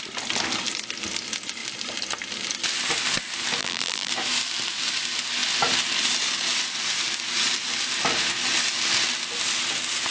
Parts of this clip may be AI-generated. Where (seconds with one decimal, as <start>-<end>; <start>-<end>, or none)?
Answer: 3.6-4.1